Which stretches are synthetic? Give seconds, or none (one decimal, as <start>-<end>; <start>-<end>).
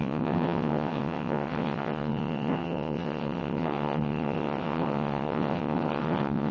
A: 0.0-6.5